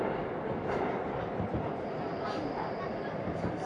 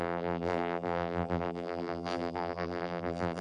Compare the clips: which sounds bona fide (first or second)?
first